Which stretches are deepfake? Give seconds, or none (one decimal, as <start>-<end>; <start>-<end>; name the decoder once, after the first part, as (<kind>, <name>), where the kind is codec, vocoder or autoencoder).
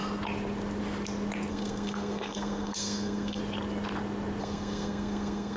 1.5-3.4 (codec, SNAC); 4.4-5.6